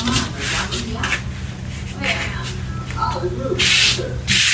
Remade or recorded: recorded